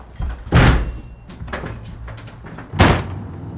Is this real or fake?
real